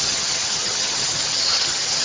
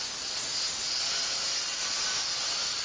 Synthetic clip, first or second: first